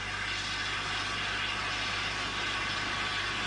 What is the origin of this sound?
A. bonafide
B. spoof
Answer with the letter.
A